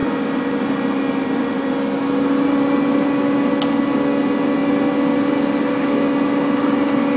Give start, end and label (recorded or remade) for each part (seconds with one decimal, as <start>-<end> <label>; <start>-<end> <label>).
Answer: 0.0-1.7 remade; 1.7-7.2 recorded